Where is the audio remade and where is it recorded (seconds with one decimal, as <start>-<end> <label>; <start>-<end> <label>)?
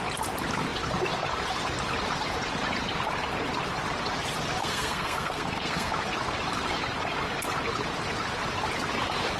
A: 0.0-4.6 recorded; 4.6-5.9 remade; 5.9-9.4 recorded